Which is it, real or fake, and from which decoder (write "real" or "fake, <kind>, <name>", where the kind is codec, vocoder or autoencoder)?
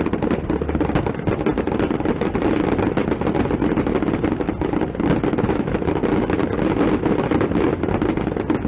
real